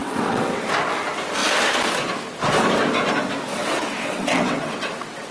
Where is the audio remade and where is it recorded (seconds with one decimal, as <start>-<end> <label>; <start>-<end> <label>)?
0.0-0.7 remade; 0.7-3.5 recorded; 3.5-5.3 remade